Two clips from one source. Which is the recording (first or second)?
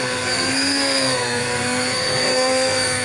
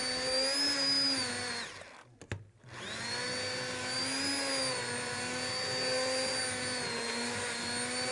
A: second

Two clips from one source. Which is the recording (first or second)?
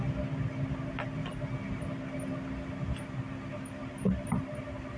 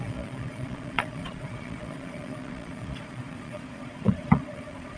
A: first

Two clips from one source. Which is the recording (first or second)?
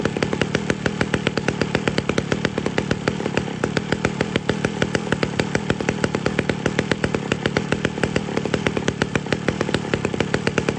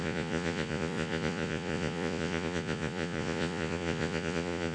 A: first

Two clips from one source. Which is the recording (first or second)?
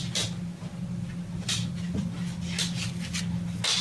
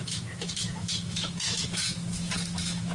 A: first